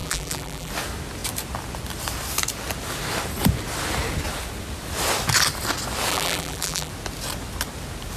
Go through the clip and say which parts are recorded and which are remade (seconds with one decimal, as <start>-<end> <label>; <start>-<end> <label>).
0.0-0.7 remade; 0.7-6.1 recorded; 6.1-6.9 remade; 6.9-8.2 recorded